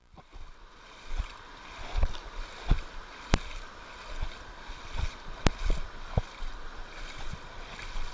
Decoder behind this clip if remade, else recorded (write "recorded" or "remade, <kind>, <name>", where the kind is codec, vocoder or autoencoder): recorded